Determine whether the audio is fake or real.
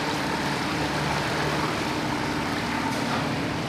fake